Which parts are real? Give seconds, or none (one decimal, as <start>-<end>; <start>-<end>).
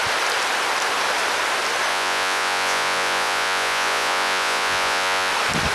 0.0-1.9; 5.3-5.7